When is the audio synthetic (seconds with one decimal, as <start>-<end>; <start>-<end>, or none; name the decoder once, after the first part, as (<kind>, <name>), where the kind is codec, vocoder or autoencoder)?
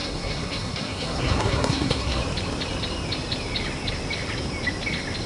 0.0-2.2 (codec, SNAC)